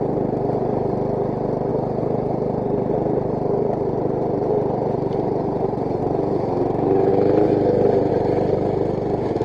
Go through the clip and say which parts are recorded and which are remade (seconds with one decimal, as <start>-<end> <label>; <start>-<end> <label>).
0.0-1.7 recorded; 1.7-6.0 remade; 6.0-9.4 recorded